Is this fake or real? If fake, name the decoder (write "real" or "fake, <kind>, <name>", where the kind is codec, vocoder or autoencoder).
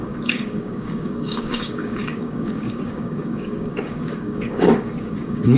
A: fake, codec, DAC